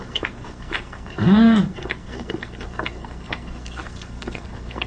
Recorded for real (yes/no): no